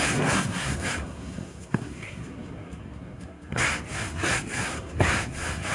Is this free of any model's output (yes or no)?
no